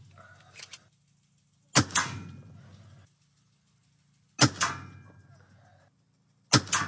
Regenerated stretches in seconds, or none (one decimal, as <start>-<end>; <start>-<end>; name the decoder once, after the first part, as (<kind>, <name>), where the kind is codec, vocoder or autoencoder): none